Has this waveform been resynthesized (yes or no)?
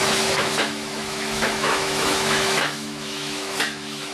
yes